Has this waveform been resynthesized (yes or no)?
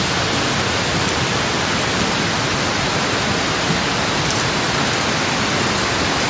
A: no